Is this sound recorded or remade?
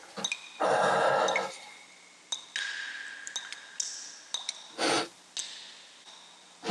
recorded